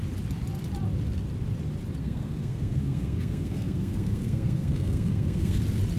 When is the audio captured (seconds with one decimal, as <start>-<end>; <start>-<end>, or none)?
0.0-2.0; 5.6-6.0